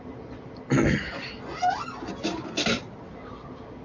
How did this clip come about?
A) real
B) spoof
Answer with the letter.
A